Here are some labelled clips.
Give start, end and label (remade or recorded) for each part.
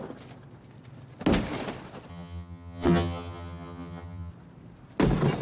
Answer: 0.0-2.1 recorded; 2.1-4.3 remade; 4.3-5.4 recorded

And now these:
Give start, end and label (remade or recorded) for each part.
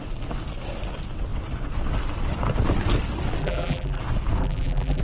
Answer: 0.0-3.4 recorded; 3.4-4.0 remade; 4.0-4.4 recorded; 4.4-5.0 remade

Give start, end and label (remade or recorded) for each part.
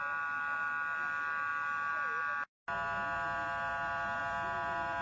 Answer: 0.0-5.0 recorded